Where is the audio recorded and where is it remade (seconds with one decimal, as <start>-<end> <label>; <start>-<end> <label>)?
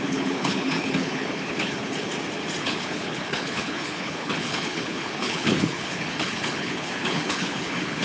0.0-2.1 remade; 2.1-2.6 recorded; 2.6-8.0 remade